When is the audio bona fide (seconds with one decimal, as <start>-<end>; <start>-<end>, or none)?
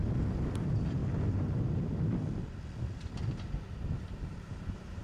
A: 0.0-0.6; 1.0-4.0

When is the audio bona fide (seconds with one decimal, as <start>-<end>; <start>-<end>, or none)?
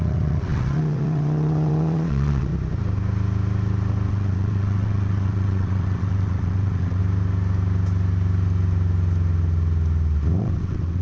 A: 2.5-4.1; 7.0-10.4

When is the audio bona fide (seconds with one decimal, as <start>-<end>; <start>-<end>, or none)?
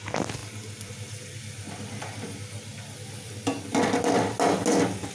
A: 0.0-5.1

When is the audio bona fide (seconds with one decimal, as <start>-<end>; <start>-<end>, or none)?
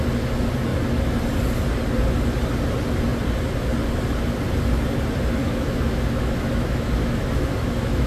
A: 0.0-5.4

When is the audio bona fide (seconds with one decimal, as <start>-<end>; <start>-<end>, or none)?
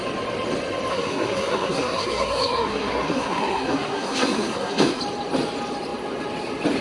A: 0.0-0.9; 5.0-6.8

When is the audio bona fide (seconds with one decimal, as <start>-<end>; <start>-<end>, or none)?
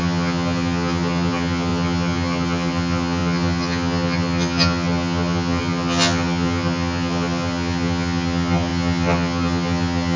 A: none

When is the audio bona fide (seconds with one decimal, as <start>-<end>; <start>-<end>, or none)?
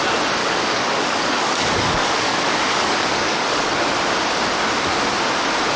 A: 0.0-0.4; 3.9-5.8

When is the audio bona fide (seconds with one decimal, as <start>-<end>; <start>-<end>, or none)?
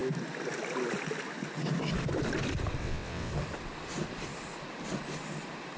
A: 0.0-2.8; 3.3-5.8